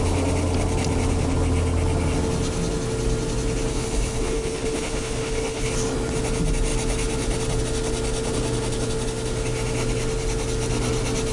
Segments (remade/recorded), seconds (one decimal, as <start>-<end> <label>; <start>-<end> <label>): 0.0-3.7 recorded; 3.7-5.7 remade; 5.7-11.3 recorded